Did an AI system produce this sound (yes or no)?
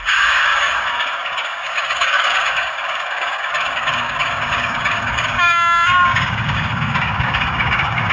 yes